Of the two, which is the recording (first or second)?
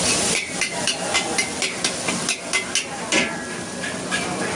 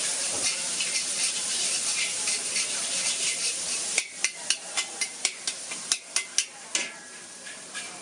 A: first